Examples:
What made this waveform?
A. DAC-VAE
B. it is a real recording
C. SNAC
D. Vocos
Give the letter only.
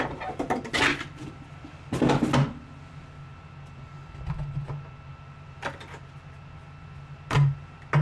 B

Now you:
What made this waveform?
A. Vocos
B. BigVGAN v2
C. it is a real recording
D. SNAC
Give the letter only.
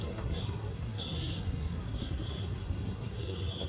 D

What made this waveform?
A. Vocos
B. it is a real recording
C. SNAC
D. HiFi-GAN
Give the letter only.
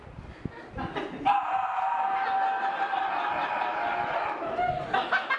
B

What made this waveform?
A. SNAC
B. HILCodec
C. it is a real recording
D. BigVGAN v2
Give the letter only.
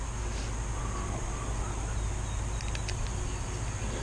C